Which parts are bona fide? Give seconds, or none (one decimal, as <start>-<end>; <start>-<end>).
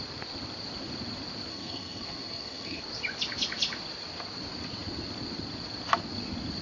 0.0-1.5; 2.8-6.6